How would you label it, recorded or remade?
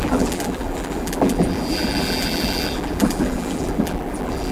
remade